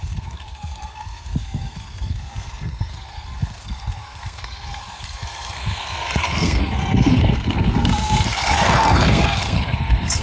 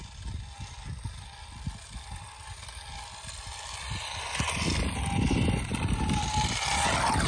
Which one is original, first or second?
second